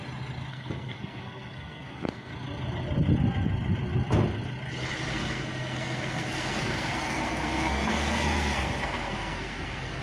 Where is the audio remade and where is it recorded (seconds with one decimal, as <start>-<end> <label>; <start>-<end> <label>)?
0.0-0.5 recorded; 0.5-2.3 remade; 2.3-5.1 recorded; 5.1-10.0 remade